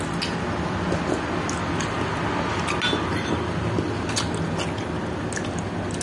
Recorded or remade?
recorded